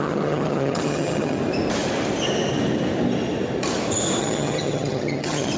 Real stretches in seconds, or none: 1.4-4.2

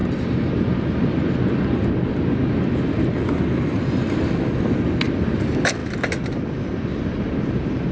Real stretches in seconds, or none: 0.0-7.9

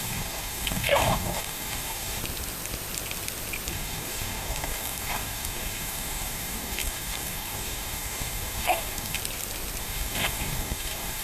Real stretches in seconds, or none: 2.2-3.7; 9.2-9.8